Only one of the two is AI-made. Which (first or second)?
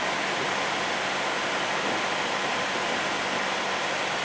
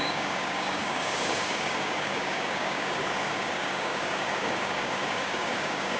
second